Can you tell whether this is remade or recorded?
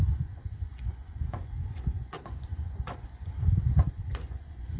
remade